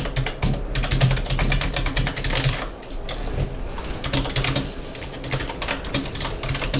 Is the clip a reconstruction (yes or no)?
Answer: no